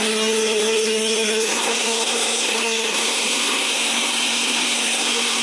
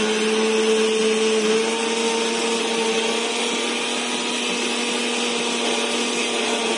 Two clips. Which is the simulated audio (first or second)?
first